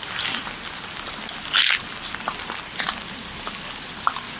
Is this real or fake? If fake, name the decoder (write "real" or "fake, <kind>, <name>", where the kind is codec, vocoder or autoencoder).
real